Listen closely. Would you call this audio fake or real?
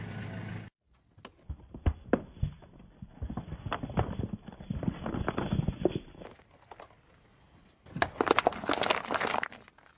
real